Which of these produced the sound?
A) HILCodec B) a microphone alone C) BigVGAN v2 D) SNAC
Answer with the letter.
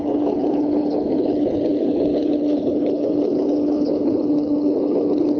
A